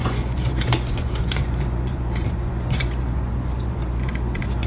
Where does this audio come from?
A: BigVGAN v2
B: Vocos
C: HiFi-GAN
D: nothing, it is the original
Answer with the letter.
B